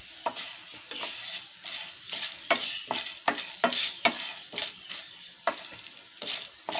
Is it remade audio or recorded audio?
recorded